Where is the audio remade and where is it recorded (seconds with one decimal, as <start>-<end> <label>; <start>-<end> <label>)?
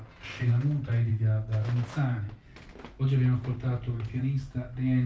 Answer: 0.0-5.1 recorded